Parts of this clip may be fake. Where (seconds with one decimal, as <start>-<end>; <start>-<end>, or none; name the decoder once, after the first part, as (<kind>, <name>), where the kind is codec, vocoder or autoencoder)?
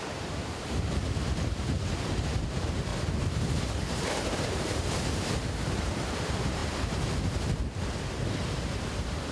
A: 0.0-2.9 (vocoder, BigVGAN v2); 3.6-6.6; 8.4-9.3